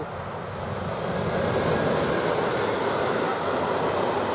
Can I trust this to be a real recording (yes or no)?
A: yes